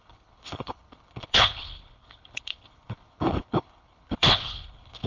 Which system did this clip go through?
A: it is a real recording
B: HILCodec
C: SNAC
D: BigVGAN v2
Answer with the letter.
B